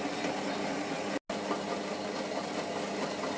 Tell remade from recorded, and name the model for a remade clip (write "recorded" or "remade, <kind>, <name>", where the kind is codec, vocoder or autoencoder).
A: recorded